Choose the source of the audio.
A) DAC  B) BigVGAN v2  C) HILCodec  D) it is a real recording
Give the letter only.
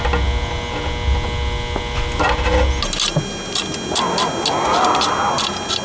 D